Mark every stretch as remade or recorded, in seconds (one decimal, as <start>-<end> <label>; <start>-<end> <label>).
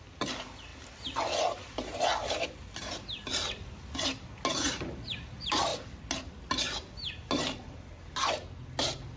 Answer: 0.0-9.2 recorded